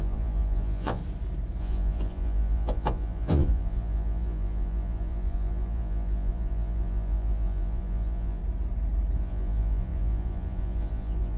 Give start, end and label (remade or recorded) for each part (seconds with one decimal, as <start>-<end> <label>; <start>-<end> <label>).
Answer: 0.0-1.0 remade; 1.0-1.6 recorded; 1.6-8.4 remade; 8.4-9.2 recorded; 9.2-11.4 remade